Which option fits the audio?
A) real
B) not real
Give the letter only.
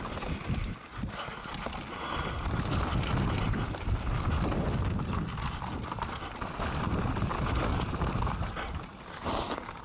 A